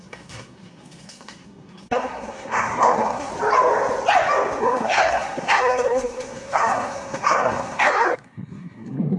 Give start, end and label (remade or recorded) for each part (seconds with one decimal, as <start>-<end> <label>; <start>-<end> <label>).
0.0-3.3 remade; 3.3-4.6 recorded; 4.6-9.2 remade

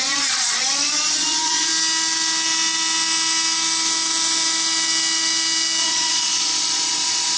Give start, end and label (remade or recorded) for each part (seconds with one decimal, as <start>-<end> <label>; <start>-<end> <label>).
0.0-1.7 remade; 1.7-5.8 recorded; 5.8-7.4 remade